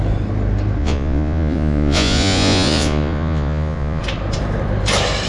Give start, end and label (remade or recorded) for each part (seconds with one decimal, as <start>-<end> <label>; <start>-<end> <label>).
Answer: 0.0-0.8 recorded; 0.8-4.0 remade; 4.0-5.3 recorded